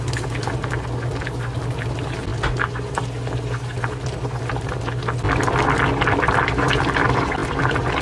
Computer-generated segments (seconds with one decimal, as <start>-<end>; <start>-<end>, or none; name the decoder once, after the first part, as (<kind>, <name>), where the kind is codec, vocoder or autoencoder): 7.0-8.0 (vocoder, BigVGAN v2)